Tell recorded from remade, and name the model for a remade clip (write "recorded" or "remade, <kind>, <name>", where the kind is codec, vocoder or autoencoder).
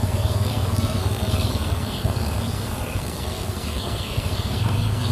remade, codec, SNAC